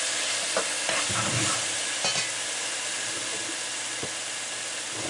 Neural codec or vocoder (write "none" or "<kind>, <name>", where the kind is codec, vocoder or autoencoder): none